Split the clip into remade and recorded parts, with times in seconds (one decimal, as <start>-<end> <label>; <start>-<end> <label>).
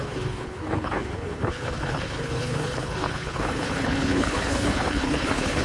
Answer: 0.0-5.6 remade